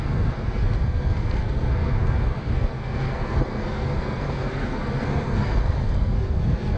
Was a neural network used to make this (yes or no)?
yes